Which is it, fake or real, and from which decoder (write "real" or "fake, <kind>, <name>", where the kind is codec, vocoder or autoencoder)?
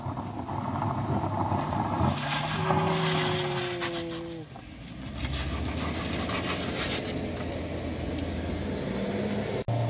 real